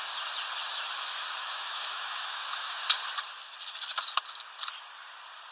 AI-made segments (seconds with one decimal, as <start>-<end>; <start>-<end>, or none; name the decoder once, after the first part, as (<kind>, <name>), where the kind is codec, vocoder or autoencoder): 1.4-2.8 (autoencoder, DAC-VAE)